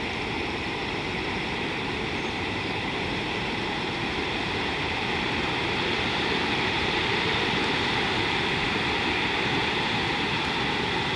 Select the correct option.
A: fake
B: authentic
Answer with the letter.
A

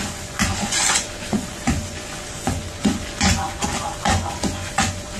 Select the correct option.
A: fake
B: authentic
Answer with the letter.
A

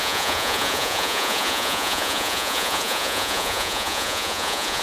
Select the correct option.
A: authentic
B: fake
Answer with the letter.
B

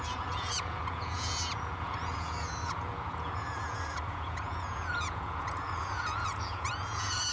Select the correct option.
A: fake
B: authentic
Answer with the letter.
A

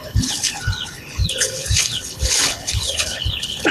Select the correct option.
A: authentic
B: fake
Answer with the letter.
B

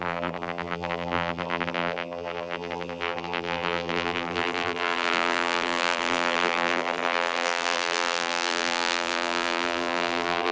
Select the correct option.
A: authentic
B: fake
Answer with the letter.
B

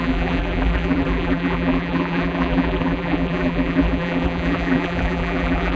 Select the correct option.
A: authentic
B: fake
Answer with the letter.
B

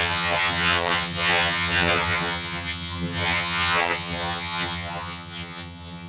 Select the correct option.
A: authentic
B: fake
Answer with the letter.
B